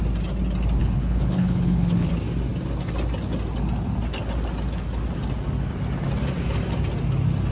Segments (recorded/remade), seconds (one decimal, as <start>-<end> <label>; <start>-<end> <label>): 0.0-0.8 recorded; 0.8-2.1 remade; 2.1-7.5 recorded